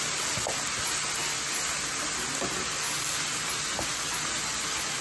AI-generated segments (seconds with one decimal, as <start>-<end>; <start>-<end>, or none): none